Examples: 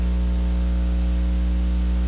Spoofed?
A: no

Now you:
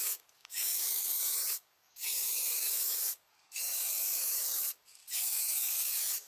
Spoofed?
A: yes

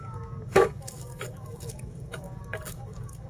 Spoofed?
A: yes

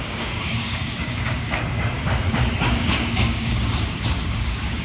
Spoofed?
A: yes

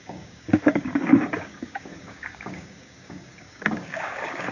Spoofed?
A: yes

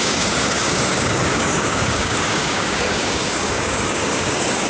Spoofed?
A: yes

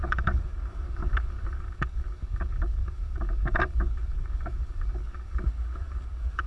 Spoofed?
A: yes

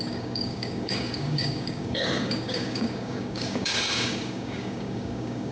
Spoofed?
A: yes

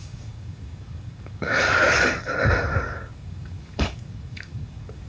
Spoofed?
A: yes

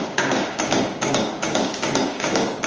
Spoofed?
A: yes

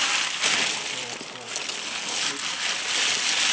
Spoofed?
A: no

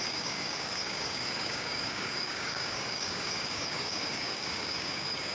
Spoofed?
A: yes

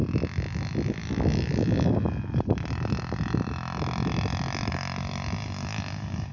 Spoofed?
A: no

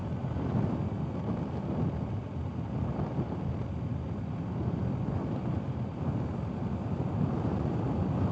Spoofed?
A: no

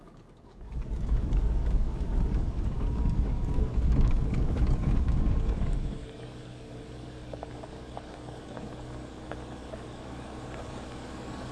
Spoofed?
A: yes